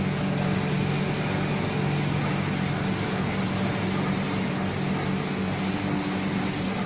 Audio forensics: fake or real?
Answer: real